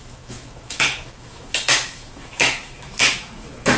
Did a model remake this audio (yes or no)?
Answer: yes